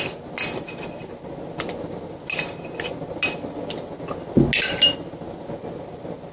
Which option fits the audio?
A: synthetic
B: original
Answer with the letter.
B